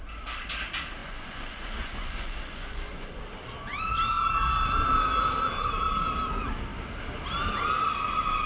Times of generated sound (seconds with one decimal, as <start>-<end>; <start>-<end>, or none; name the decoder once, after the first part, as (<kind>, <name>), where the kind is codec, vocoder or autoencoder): 1.0-3.2 (vocoder, Vocos)